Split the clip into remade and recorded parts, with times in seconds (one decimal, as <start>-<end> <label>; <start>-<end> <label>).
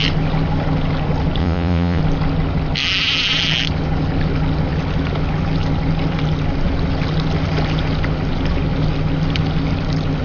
0.0-1.4 recorded; 1.4-2.0 remade; 2.0-10.2 recorded